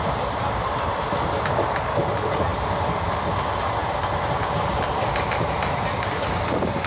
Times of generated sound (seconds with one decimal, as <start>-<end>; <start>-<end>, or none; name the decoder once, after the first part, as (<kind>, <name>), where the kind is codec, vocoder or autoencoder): 2.5-3.4 (vocoder, BigVGAN v2)